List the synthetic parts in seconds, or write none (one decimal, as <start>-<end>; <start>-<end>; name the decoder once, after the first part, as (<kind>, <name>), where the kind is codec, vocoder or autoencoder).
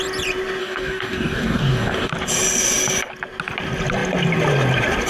0.6-2.1 (codec, DAC)